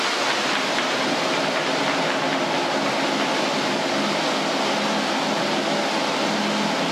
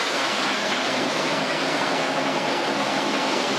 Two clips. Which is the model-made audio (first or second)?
second